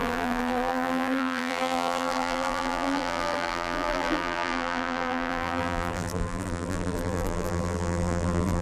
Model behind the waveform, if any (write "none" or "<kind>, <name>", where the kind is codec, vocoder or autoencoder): vocoder, BigVGAN v2